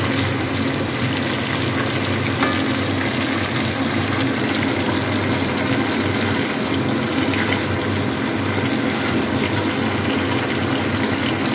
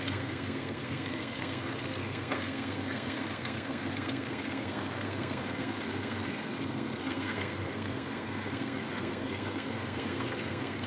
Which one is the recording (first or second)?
first